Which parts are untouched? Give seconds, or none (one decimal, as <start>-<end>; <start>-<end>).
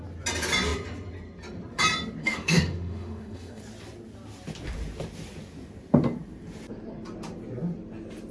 0.0-2.2; 3.6-8.3